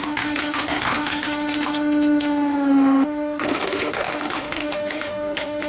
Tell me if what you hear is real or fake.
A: fake